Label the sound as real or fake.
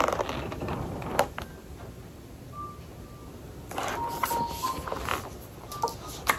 real